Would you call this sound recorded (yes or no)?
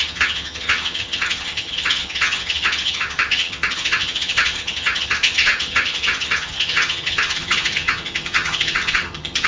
no